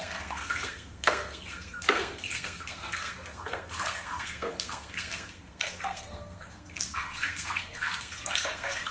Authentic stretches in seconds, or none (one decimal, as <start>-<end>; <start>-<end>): none